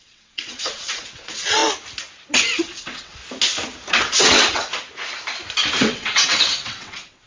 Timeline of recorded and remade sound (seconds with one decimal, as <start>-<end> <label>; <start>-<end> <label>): 0.0-1.6 remade; 1.6-2.3 recorded; 2.3-3.2 remade; 3.2-3.9 recorded; 3.9-4.6 remade; 4.6-5.8 recorded; 5.8-7.3 remade